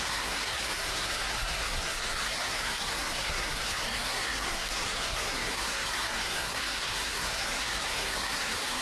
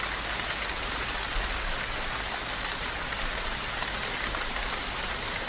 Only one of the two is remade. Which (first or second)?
first